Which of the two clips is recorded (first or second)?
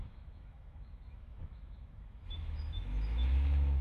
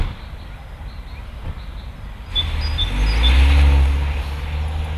second